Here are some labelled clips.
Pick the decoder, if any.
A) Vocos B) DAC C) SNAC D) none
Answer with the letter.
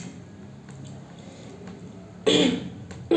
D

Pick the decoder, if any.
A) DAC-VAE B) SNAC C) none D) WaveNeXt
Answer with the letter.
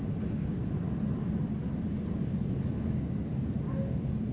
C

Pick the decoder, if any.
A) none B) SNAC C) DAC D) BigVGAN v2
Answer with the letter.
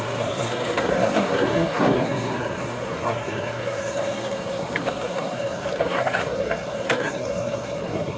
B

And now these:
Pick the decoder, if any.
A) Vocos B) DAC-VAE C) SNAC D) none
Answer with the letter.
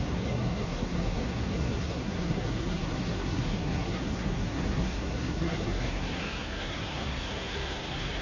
C